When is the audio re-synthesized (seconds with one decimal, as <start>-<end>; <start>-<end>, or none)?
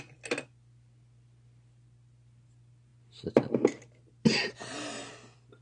none